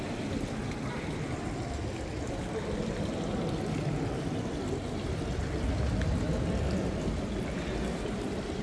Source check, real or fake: real